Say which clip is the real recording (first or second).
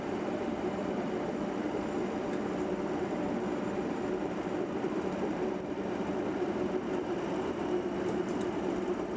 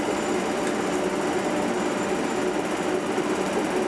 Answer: second